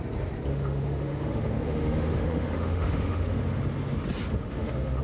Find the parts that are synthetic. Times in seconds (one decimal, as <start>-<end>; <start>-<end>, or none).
0.5-3.4; 4.3-5.0